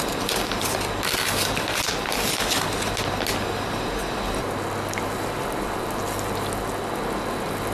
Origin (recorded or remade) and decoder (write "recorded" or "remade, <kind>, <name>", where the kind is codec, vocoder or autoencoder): recorded